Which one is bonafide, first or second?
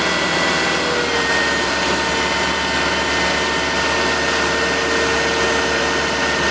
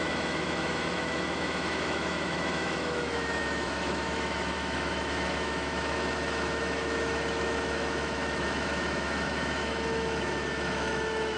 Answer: first